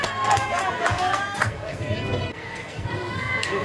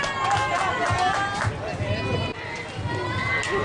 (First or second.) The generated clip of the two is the first